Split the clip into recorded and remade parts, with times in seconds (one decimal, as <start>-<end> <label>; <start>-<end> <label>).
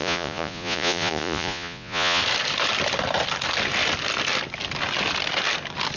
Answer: 0.0-2.2 remade; 2.2-6.0 recorded